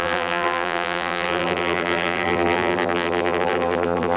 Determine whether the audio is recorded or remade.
remade